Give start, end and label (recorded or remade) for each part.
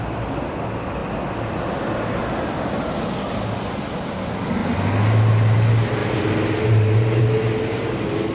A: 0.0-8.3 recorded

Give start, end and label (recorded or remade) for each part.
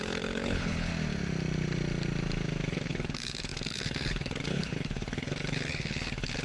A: 0.0-0.9 remade; 0.9-2.7 recorded; 2.7-6.4 remade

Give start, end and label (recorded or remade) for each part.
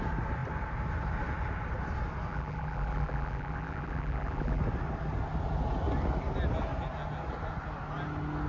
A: 0.0-2.3 recorded; 2.3-4.6 remade; 4.6-8.5 recorded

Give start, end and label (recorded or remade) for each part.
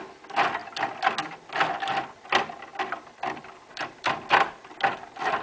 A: 0.0-2.7 recorded; 2.7-4.3 remade; 4.3-5.4 recorded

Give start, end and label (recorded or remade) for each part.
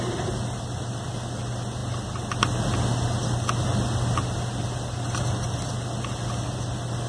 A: 0.0-7.1 recorded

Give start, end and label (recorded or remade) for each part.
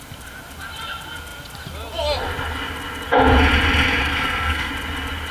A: 0.0-4.0 recorded; 4.0-4.7 remade; 4.7-5.3 recorded